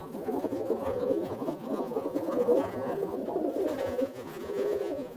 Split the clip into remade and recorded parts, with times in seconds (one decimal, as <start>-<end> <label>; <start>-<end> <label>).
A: 0.0-3.2 remade; 3.2-3.8 recorded; 3.8-5.2 remade